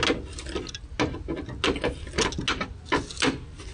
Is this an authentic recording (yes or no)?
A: yes